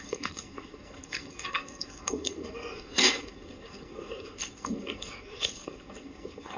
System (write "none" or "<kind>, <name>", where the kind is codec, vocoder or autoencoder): codec, SNAC